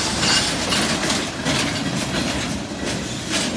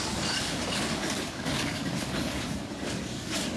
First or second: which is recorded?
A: first